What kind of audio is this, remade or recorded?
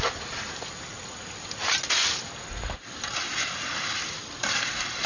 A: recorded